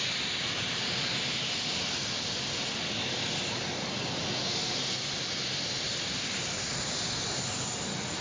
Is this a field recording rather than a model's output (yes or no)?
yes